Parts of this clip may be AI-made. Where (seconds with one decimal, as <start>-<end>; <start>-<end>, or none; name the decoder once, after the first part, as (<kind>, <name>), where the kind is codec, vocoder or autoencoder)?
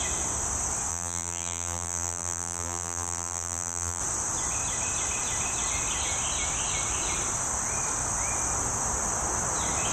0.9-4.0 (vocoder, BigVGAN v2)